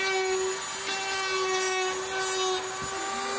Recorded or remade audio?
recorded